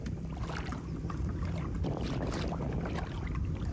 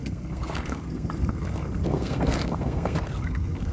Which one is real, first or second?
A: first